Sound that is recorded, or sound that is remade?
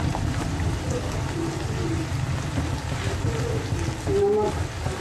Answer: recorded